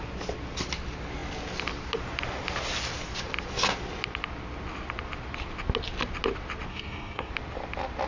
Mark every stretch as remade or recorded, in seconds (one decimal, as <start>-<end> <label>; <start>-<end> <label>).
0.0-6.7 recorded; 6.7-7.3 remade; 7.3-8.1 recorded